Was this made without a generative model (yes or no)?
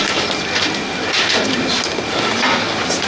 yes